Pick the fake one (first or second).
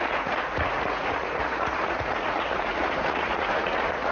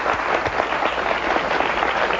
first